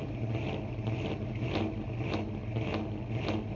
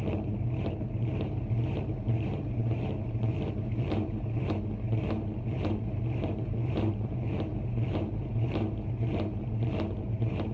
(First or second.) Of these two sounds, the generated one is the second